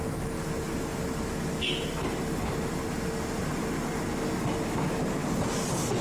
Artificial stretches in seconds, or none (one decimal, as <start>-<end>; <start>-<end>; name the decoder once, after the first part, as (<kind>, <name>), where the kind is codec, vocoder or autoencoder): none